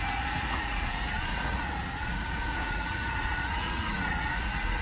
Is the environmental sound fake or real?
fake